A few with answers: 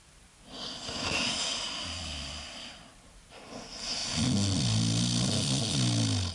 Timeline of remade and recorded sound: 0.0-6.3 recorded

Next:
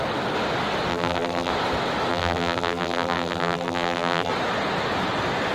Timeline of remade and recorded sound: 0.0-0.9 recorded; 0.9-1.5 remade; 1.5-2.1 recorded; 2.1-4.3 remade; 4.3-5.5 recorded

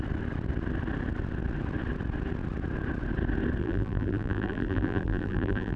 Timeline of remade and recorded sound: 0.0-3.6 recorded; 3.6-5.8 remade

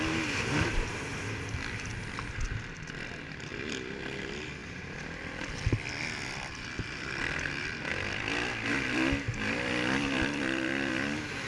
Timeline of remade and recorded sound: 0.0-1.1 recorded; 1.1-2.0 remade; 2.0-3.5 recorded; 3.5-4.0 remade; 4.0-4.6 recorded; 4.6-6.6 remade; 6.6-7.9 recorded; 7.9-10.9 remade; 10.9-11.5 recorded

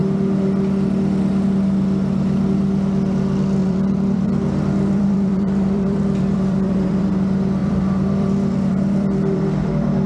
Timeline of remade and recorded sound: 0.0-3.6 recorded; 3.6-7.1 remade; 7.1-7.6 recorded; 7.6-9.7 remade; 9.7-10.1 recorded